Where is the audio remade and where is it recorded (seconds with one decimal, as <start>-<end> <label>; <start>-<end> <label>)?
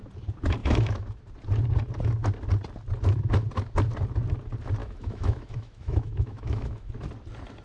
0.0-0.6 recorded; 0.6-1.2 remade; 1.2-4.8 recorded; 4.8-6.9 remade; 6.9-7.6 recorded